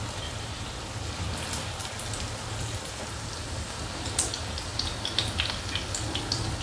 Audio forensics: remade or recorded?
recorded